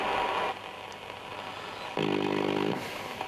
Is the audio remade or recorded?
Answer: recorded